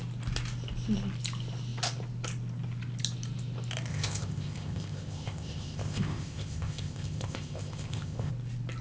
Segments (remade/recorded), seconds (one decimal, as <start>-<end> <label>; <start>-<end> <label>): 0.0-3.9 recorded; 3.9-8.3 remade; 8.3-8.8 recorded